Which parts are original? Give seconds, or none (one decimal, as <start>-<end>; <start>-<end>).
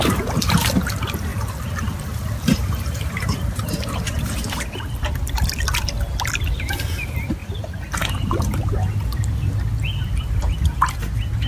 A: 0.0-1.3; 5.1-7.4; 9.6-11.5